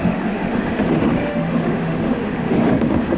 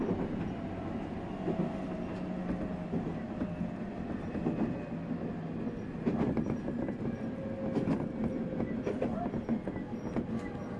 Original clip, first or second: second